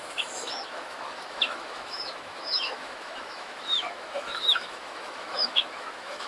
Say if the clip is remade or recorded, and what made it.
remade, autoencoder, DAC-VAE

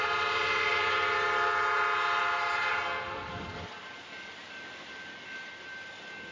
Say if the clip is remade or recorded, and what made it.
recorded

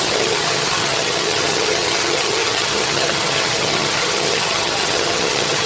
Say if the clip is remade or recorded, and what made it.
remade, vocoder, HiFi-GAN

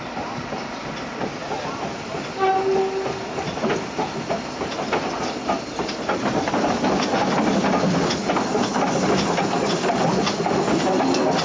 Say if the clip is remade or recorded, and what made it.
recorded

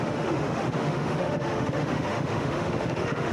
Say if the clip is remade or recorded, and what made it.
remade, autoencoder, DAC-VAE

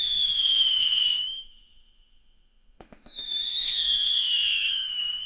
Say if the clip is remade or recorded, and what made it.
remade, autoencoder, DAC-VAE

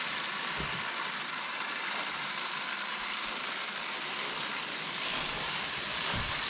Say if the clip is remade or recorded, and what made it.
remade, vocoder, BigVGAN v2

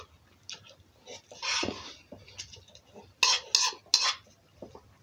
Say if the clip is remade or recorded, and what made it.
recorded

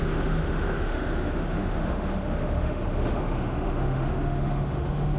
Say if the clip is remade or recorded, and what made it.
remade, autoencoder, DAC-VAE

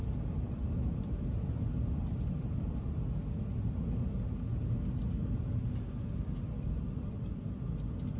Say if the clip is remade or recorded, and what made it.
recorded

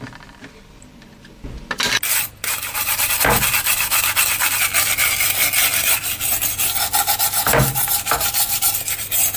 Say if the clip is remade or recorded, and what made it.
recorded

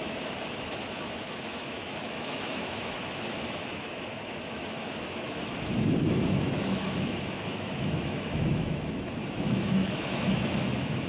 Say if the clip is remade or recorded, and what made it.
remade, autoencoder, DAC-VAE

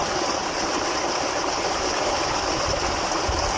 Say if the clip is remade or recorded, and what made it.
recorded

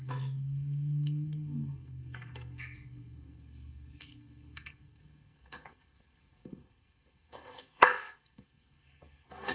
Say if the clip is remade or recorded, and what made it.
remade, codec, SNAC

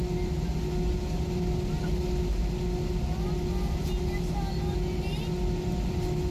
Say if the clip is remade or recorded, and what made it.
recorded